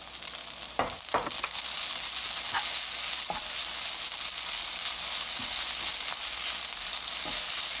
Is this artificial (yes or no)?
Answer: no